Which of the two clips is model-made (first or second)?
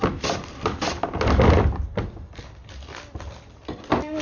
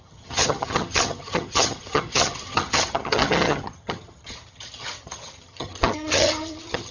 second